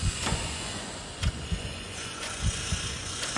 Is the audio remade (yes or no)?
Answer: yes